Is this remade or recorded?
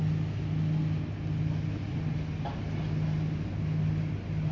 recorded